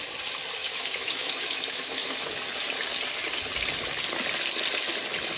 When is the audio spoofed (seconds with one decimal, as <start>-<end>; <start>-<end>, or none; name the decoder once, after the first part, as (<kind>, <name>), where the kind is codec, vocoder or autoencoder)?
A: 0.6-2.3 (autoencoder, DAC-VAE)